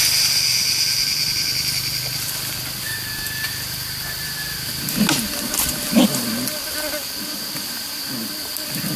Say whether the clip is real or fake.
real